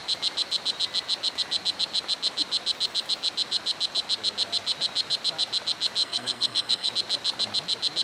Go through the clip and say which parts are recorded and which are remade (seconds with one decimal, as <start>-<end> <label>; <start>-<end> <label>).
0.0-6.0 recorded; 6.0-6.9 remade; 6.9-8.0 recorded